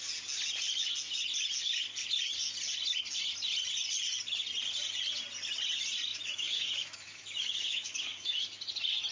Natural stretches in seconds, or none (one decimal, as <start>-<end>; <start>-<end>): 0.0-6.1; 8.4-9.1